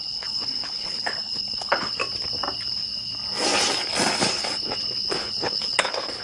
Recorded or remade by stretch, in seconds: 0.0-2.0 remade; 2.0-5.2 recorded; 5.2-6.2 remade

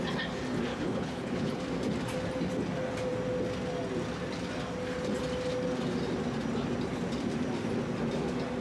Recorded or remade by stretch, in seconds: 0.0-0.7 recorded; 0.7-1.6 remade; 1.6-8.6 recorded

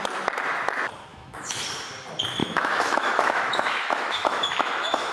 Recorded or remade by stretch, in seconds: 0.0-1.1 recorded; 1.1-1.6 remade; 1.6-2.4 recorded; 2.4-5.1 remade

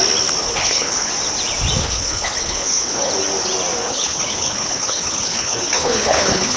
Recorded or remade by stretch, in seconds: 0.0-0.4 recorded; 0.4-1.1 remade; 1.1-1.8 recorded; 1.8-3.1 remade; 3.1-3.8 recorded; 3.8-6.6 remade